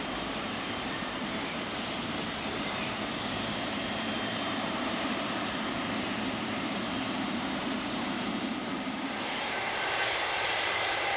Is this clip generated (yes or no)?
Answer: yes